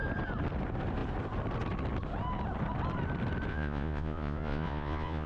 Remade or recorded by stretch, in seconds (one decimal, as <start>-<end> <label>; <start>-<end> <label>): 0.0-3.5 recorded; 3.5-5.3 remade